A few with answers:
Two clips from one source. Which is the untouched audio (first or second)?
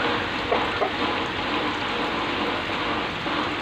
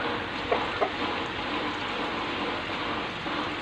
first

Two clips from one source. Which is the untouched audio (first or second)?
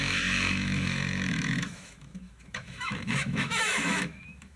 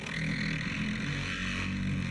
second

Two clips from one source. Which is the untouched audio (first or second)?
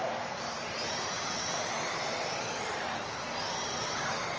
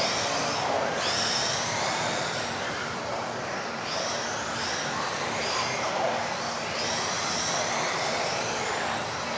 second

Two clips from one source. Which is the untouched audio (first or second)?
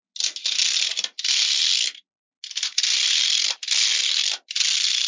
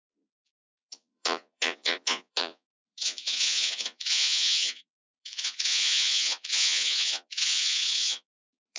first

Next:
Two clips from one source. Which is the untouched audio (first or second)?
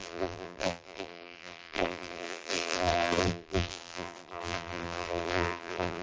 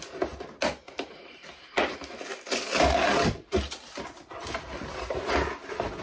second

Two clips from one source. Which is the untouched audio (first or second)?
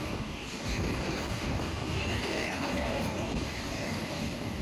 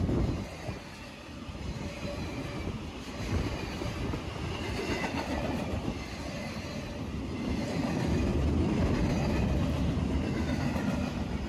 second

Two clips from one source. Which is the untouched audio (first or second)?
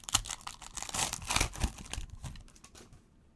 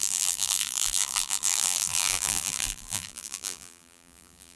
first